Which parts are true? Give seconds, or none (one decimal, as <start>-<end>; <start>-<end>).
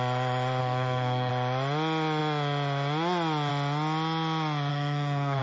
0.0-0.6; 1.3-4.7